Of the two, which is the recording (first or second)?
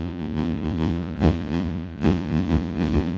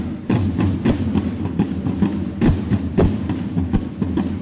second